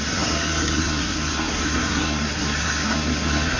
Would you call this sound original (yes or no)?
no